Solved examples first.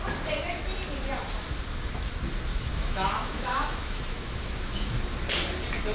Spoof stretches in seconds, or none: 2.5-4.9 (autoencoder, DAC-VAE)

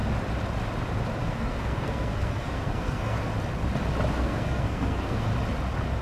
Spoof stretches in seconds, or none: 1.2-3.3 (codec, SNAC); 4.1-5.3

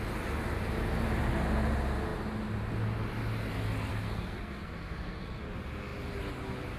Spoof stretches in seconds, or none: 3.9-5.4 (codec, SNAC)

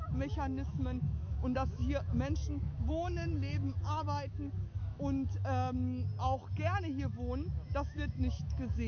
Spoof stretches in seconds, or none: 0.0-6.1 (autoencoder, DAC-VAE); 6.8-8.9

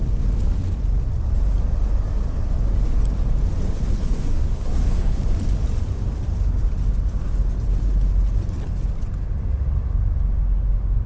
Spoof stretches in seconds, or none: 3.9-5.2 (codec, SNAC)

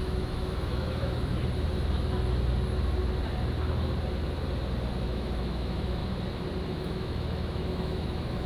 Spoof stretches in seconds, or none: 0.0-1.3 (autoencoder, DAC-VAE); 5.0-6.0; 6.7-8.5

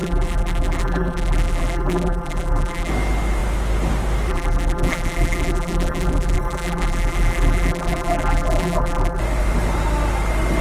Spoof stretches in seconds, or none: 0.0-2.9 (vocoder, BigVGAN v2); 4.3-9.2

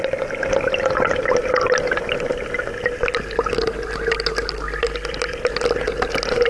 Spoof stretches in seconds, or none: none